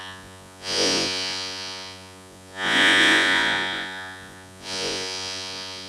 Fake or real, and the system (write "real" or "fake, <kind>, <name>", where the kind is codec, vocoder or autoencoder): fake, vocoder, Vocos